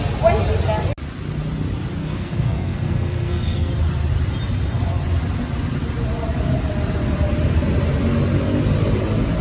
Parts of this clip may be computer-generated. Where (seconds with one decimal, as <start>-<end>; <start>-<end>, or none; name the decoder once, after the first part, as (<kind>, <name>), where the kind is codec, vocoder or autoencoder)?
2.0-3.7 (codec, SNAC)